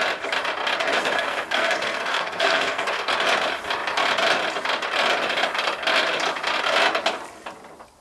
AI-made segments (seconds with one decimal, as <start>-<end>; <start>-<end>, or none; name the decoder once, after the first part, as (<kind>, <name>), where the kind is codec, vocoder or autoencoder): 0.9-3.1 (codec, SNAC)